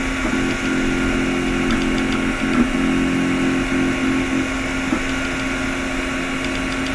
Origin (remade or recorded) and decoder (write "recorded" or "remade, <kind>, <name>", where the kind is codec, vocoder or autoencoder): recorded